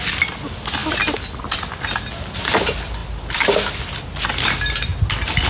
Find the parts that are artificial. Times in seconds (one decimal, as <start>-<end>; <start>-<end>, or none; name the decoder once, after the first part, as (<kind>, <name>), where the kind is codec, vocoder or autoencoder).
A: none